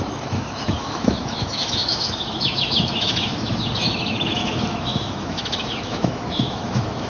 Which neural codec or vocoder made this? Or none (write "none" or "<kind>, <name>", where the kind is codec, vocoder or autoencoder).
autoencoder, DAC-VAE